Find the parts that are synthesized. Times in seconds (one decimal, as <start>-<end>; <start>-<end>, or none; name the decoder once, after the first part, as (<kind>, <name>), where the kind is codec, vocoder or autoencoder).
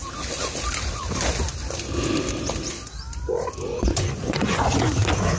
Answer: 3.7-4.9 (vocoder, Vocos)